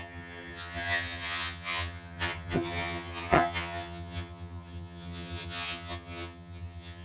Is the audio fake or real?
fake